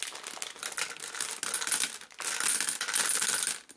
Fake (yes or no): no